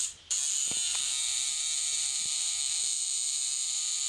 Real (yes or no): no